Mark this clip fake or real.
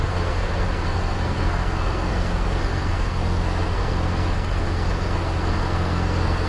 fake